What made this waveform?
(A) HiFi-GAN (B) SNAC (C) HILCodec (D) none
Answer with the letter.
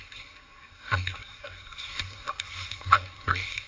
B